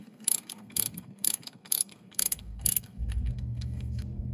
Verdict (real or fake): fake